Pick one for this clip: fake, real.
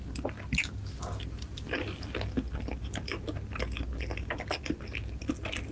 real